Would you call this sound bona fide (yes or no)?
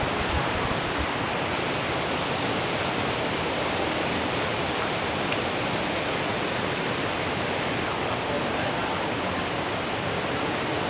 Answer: yes